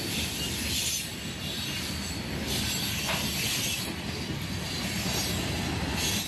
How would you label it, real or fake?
real